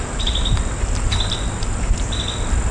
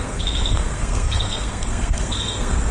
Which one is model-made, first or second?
second